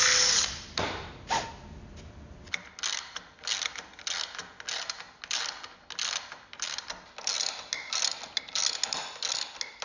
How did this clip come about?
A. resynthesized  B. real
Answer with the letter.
B